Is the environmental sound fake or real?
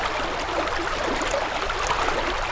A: real